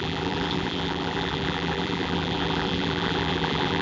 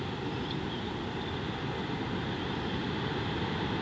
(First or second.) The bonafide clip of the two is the second